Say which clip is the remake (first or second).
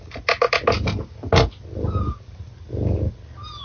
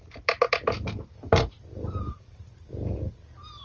second